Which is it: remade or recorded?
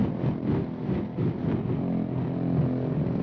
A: recorded